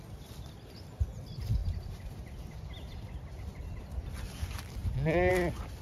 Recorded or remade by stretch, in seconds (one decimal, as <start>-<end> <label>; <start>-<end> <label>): 0.0-1.6 recorded; 1.6-4.1 remade; 4.1-5.8 recorded